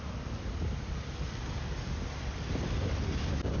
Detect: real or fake real